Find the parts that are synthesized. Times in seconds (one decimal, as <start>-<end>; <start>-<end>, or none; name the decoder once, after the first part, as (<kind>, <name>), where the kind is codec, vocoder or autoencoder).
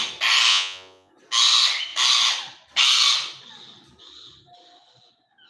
0.5-1.1 (vocoder, Vocos)